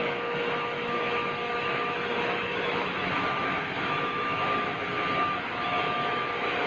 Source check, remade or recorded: remade